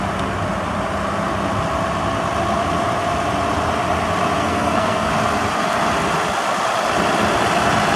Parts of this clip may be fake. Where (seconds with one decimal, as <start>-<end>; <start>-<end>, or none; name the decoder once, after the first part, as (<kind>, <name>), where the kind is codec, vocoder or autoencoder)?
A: 4.4-5.1 (codec, SNAC)